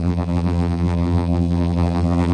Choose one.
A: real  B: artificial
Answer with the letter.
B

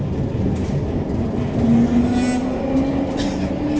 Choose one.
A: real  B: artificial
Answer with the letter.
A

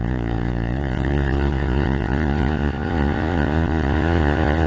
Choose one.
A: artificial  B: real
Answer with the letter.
A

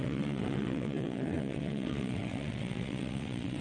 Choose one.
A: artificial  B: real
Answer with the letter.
A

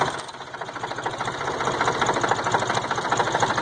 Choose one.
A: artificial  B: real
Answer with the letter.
B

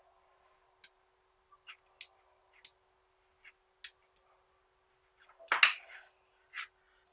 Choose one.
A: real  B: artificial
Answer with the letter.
A